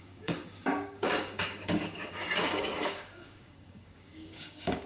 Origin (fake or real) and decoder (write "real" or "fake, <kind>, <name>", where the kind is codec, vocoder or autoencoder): fake, codec, DAC